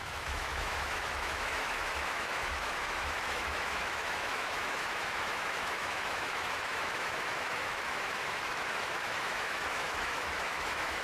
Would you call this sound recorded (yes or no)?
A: no